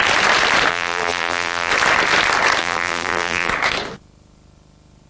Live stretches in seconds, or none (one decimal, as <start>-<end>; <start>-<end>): 0.0-0.7; 1.7-2.6; 3.5-5.1